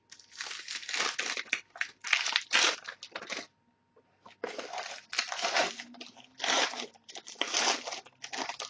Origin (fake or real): real